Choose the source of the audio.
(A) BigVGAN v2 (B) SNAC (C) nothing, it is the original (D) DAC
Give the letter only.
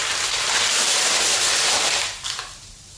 C